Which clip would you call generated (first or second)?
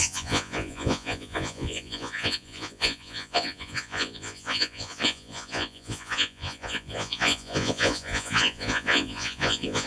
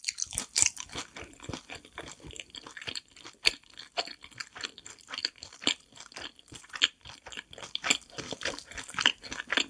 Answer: first